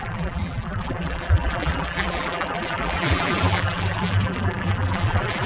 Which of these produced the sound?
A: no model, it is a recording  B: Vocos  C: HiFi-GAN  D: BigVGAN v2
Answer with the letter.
D